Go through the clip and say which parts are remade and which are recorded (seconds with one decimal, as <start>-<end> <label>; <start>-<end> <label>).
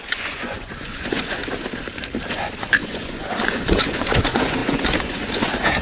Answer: 0.0-1.4 remade; 1.4-2.2 recorded; 2.2-5.8 remade